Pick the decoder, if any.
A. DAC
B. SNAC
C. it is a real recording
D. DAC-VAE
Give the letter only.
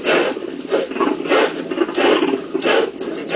C